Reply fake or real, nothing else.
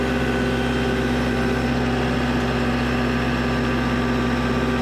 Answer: real